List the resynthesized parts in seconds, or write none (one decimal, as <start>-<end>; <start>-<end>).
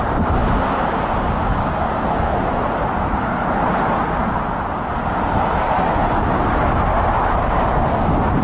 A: none